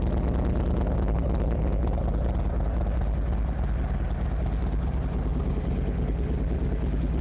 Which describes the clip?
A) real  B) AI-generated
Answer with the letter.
A